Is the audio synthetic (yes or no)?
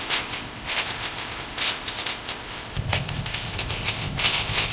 yes